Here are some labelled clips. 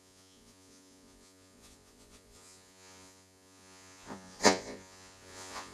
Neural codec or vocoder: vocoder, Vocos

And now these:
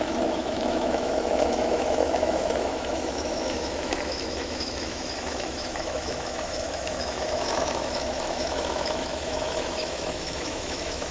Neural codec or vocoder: autoencoder, DAC-VAE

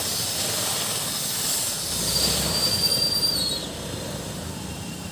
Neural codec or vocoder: vocoder, BigVGAN v2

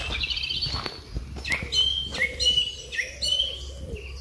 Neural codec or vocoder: none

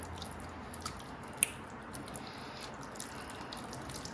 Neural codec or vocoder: none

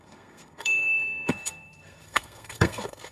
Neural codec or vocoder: codec, SNAC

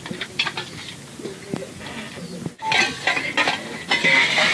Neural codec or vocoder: none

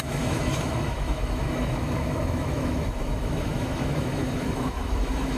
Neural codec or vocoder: autoencoder, DAC-VAE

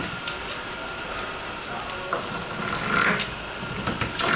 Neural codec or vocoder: none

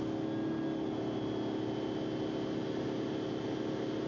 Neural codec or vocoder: none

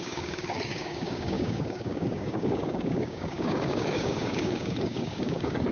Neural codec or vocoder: codec, DAC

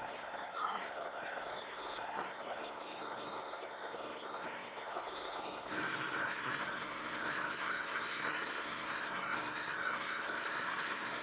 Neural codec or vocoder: codec, SNAC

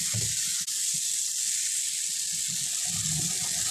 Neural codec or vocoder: none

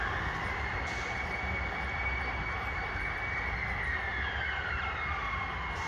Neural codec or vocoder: none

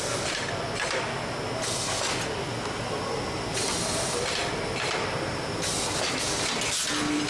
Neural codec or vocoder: none